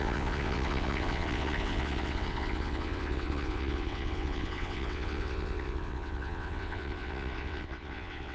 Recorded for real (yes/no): no